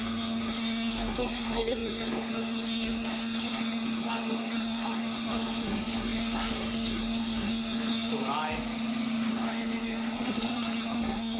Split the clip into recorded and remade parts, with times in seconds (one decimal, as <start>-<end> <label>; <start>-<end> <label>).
0.0-8.1 remade; 8.1-9.3 recorded; 9.3-11.4 remade